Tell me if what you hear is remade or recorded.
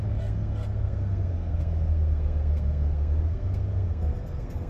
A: remade